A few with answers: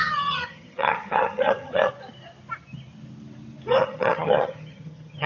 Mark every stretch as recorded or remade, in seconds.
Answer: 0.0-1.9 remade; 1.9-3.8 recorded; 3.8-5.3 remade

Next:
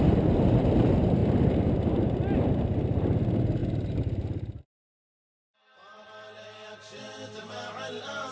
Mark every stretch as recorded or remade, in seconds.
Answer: 0.0-8.3 recorded

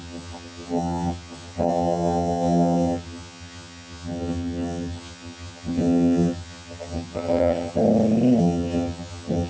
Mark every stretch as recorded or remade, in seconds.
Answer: 0.0-7.8 remade; 7.8-8.4 recorded; 8.4-9.5 remade

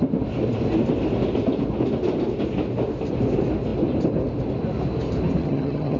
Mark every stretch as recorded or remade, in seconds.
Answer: 0.0-5.4 recorded; 5.4-6.0 remade